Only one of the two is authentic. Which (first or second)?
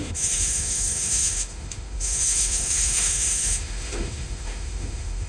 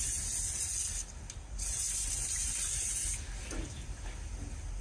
second